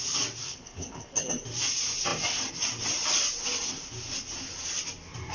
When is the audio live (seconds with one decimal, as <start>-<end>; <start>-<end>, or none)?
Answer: 0.0-0.4; 1.3-5.3

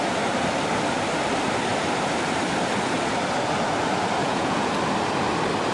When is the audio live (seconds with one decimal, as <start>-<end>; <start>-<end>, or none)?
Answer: 0.0-4.2; 4.7-5.7

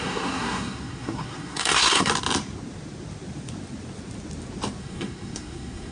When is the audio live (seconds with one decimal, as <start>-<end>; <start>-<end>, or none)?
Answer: 2.1-4.8